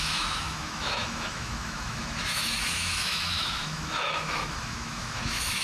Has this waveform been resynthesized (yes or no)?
yes